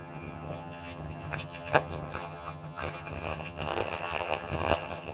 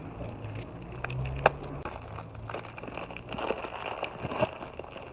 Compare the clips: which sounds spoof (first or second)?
first